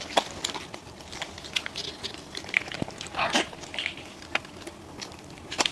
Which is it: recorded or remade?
remade